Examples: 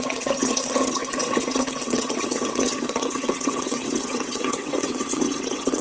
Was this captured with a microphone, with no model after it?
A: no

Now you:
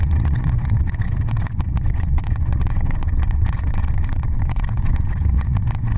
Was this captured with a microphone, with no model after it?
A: no